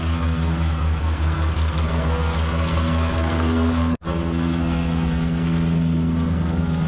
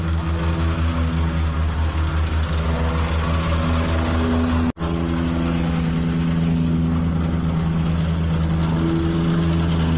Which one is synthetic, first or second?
first